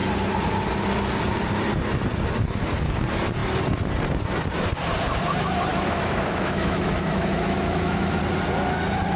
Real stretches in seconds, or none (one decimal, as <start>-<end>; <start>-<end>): 0.0-5.7; 8.2-9.2